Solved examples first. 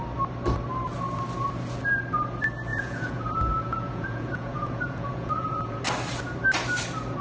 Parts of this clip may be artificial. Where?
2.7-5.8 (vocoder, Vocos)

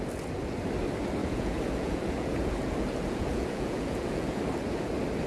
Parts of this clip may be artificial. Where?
1.2-4.4 (vocoder, Vocos)

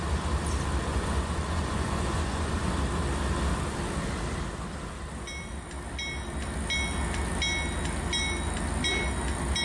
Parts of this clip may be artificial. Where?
0.9-2.7 (vocoder, Vocos)

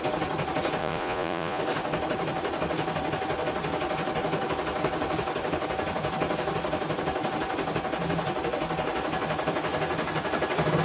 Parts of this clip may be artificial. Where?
0.8-1.6 (vocoder, Vocos)

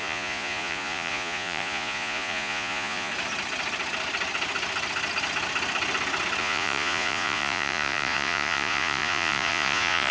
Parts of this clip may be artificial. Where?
0.0-3.1 (vocoder, Vocos); 6.4-10.1

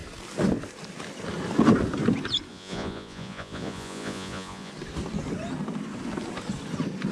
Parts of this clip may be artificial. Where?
2.5-4.7 (vocoder, Vocos)

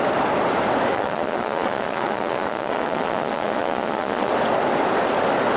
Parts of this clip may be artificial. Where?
0.9-4.3 (vocoder, Vocos)

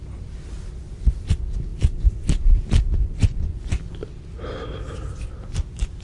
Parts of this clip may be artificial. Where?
3.0-3.8 (vocoder, Vocos)